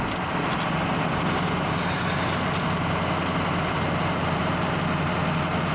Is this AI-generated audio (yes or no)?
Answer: no